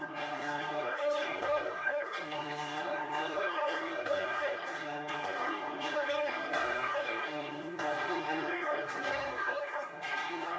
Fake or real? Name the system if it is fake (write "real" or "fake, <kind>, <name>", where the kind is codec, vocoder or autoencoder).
fake, codec, SNAC